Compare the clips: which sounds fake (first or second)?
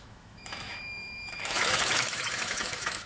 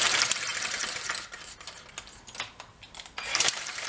first